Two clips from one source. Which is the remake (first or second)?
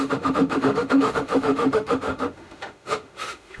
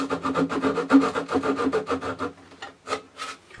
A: first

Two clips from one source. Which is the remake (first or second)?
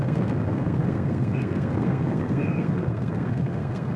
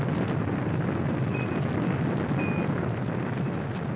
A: first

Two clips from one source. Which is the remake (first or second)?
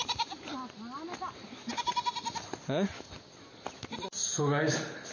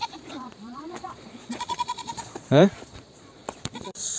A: second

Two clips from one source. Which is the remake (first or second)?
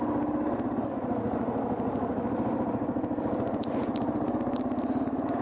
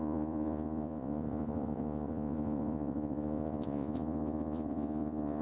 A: second